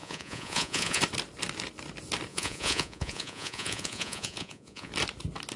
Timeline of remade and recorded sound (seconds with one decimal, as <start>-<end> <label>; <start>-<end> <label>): 0.0-1.0 remade; 1.0-2.3 recorded; 2.3-4.9 remade; 4.9-5.6 recorded